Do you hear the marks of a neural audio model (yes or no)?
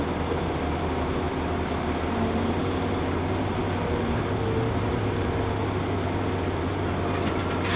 no